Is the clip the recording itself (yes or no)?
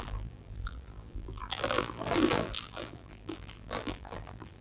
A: no